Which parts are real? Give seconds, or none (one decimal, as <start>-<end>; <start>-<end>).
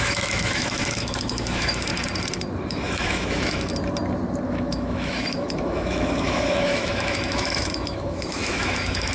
1.9-2.7; 3.7-4.5